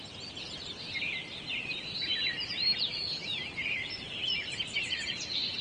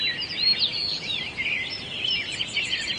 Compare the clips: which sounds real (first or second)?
second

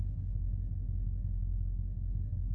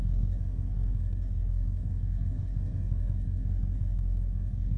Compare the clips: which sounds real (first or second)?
first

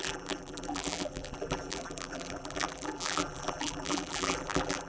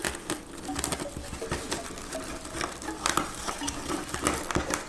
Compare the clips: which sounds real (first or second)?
second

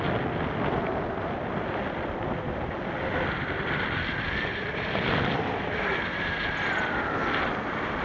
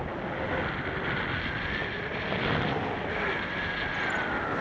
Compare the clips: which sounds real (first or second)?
second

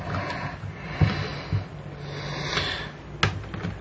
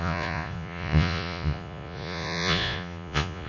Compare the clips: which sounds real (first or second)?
first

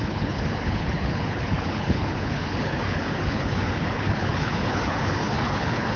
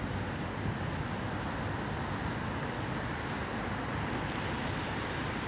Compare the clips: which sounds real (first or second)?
second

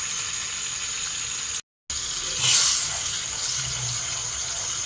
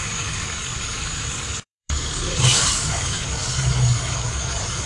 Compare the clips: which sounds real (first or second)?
first